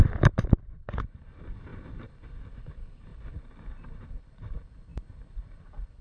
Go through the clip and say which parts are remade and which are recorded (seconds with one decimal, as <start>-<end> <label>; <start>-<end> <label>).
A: 0.0-3.1 remade; 3.1-4.2 recorded; 4.2-4.9 remade; 4.9-5.4 recorded; 5.4-6.0 remade